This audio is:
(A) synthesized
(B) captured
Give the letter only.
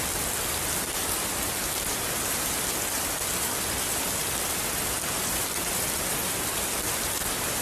A